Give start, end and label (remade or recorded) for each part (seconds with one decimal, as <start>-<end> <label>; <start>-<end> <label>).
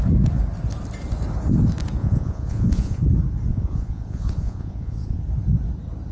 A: 0.0-2.0 recorded; 2.0-3.0 remade; 3.0-3.5 recorded; 3.5-5.2 remade; 5.2-6.1 recorded